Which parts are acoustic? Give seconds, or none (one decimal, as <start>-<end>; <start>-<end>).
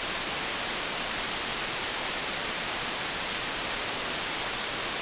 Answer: 0.0-1.5; 4.4-5.0